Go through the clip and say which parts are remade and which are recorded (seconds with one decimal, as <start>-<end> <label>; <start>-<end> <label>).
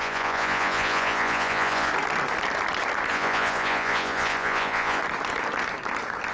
0.0-1.9 remade; 1.9-3.1 recorded; 3.1-5.0 remade; 5.0-6.3 recorded